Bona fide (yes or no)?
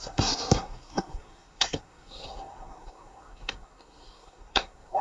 no